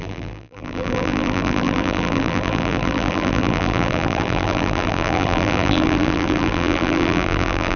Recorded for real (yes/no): no